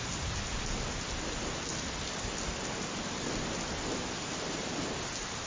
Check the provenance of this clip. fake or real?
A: real